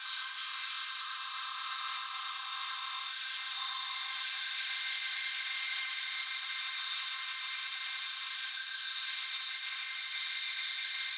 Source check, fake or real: fake